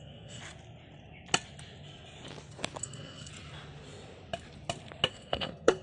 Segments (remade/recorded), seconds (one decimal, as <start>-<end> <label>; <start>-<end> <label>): 0.0-0.4 remade; 0.4-2.8 recorded; 2.8-3.3 remade; 3.3-5.1 recorded; 5.1-5.8 remade